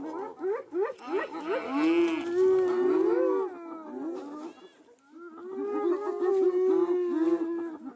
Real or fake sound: real